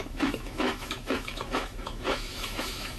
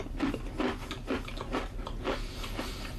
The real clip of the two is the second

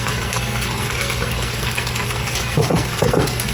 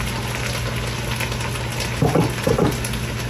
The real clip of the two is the second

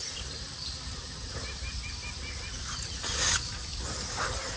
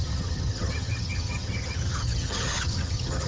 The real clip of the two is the first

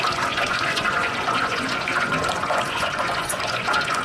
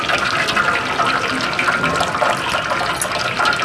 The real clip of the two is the second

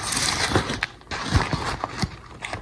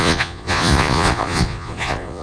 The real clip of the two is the first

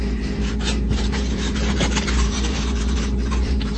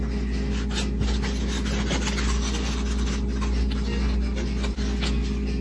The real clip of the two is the second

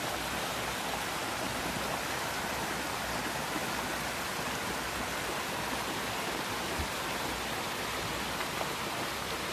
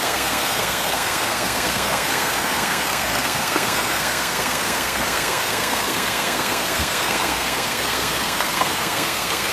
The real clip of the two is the first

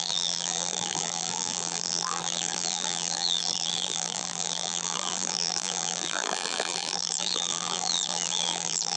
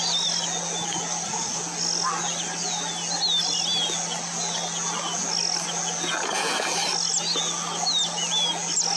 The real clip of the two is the second